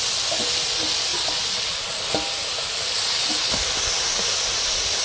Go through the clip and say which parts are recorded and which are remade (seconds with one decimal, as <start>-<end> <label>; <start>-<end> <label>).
0.0-1.1 recorded; 1.1-2.0 remade; 2.0-5.0 recorded